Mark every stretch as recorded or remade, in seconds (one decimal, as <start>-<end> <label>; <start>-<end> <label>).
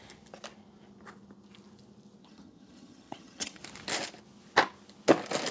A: 0.0-2.2 recorded; 2.2-3.6 remade; 3.6-5.5 recorded